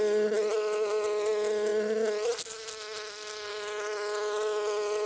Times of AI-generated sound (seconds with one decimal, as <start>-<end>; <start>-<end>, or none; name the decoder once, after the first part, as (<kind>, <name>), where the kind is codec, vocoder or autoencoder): none